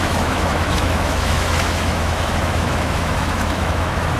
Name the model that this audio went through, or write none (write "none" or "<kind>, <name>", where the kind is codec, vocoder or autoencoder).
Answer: autoencoder, DAC-VAE